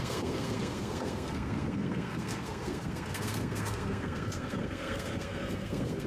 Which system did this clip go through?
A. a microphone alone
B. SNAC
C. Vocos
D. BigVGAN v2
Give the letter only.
B